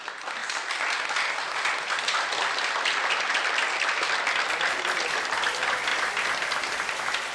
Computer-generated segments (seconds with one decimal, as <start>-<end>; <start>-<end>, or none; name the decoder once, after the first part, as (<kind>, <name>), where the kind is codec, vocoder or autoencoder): 5.9-6.6 (vocoder, BigVGAN v2)